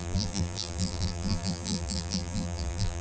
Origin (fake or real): fake